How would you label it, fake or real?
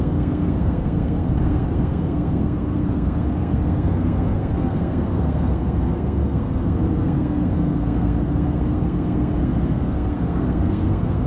fake